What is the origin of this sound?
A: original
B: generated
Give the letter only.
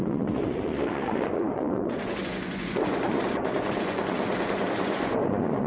B